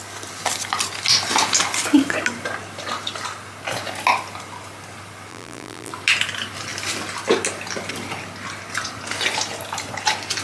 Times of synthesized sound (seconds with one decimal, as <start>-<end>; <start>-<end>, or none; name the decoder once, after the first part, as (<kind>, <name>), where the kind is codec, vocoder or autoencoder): 5.3-5.9 (vocoder, BigVGAN v2)